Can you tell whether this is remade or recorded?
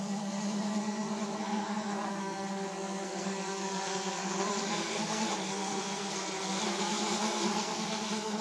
remade